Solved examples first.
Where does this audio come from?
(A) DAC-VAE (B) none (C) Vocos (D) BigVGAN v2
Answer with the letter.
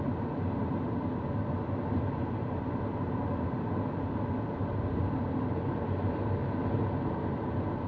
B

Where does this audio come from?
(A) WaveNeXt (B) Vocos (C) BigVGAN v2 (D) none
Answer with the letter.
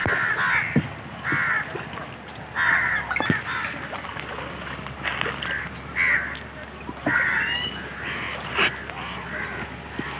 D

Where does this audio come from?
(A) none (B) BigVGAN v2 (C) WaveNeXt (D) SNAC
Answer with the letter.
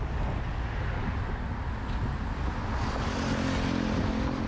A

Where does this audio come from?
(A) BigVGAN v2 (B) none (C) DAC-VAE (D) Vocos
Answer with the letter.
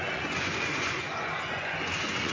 D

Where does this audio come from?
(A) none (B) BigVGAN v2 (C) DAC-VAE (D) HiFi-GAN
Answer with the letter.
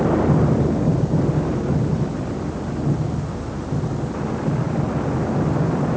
A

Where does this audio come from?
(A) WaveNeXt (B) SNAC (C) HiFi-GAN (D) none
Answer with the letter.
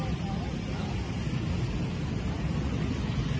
D